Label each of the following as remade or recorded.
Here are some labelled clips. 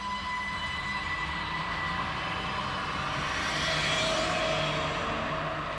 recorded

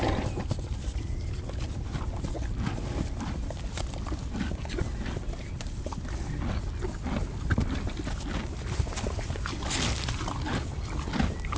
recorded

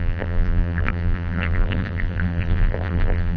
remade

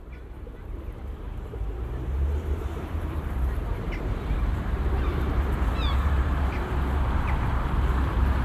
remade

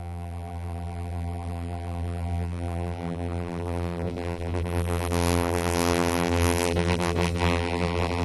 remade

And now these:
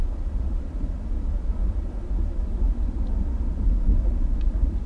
recorded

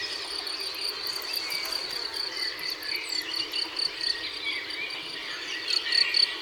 recorded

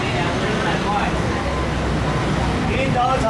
recorded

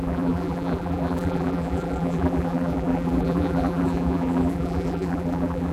remade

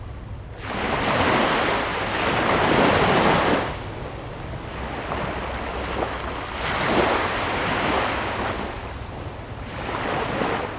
recorded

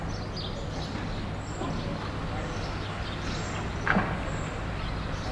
recorded